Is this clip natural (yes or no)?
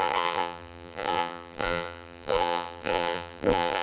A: no